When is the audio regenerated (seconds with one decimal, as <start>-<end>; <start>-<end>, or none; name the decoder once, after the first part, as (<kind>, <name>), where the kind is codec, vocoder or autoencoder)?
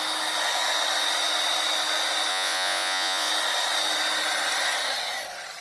2.3-3.3 (vocoder, Vocos)